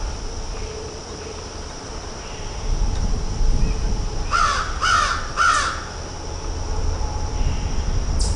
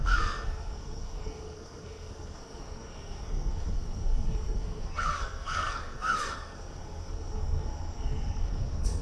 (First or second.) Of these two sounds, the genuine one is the first